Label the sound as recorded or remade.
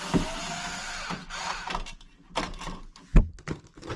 recorded